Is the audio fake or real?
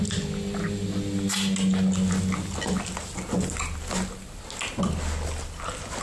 real